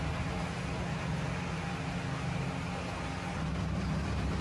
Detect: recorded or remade recorded